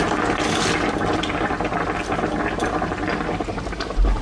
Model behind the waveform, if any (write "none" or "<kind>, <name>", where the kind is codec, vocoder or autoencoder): none